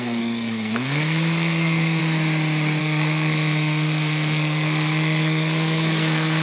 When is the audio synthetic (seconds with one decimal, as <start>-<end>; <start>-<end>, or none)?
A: 0.0-2.0; 2.8-6.4